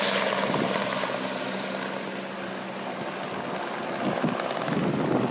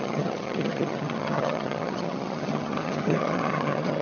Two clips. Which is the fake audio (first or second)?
second